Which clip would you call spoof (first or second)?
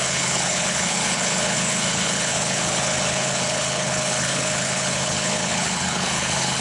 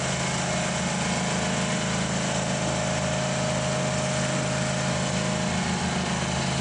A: first